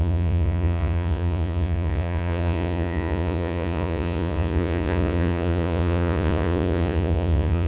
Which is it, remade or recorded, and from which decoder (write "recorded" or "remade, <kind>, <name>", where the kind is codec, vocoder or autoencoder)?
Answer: remade, vocoder, Vocos